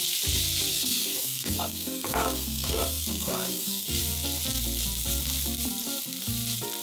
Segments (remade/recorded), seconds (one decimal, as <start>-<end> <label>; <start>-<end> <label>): 0.0-0.7 recorded; 0.7-4.0 remade; 4.0-6.8 recorded